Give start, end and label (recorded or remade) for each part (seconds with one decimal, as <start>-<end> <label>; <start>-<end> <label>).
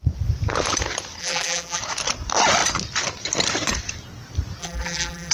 0.0-1.2 recorded; 1.2-1.8 remade; 1.8-4.6 recorded; 4.6-5.3 remade